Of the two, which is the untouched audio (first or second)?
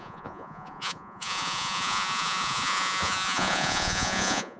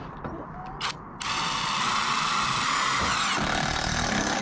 second